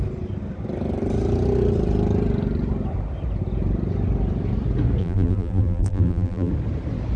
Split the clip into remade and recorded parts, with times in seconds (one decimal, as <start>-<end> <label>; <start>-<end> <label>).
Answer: 0.0-5.0 recorded; 5.0-6.5 remade; 6.5-7.2 recorded